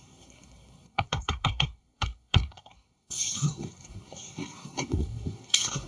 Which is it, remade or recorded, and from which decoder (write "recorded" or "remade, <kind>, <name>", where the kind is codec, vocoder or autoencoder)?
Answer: remade, codec, SNAC